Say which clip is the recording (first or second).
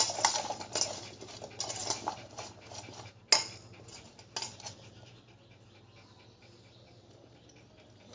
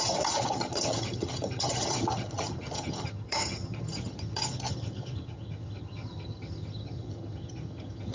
first